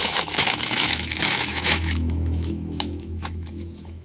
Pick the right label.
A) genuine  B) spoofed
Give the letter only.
B